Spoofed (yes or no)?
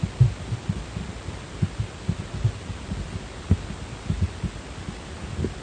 no